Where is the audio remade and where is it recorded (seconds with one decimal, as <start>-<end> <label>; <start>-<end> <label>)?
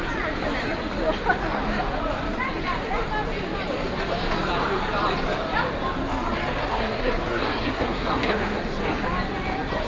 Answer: 0.0-6.7 recorded; 6.7-8.6 remade; 8.6-9.9 recorded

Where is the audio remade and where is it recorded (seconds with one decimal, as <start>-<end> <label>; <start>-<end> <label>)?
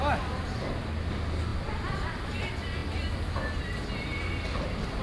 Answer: 0.0-5.0 recorded